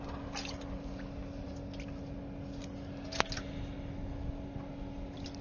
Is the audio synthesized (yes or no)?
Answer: no